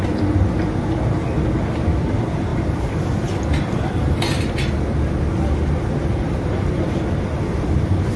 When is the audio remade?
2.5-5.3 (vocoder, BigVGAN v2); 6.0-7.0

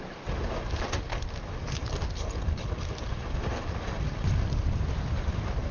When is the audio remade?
1.6-5.0 (vocoder, BigVGAN v2)

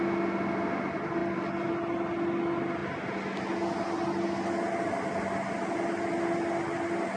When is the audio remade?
1.2-1.7 (vocoder, BigVGAN v2)

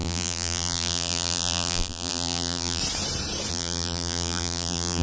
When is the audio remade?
0.0-2.8 (vocoder, BigVGAN v2); 3.5-5.0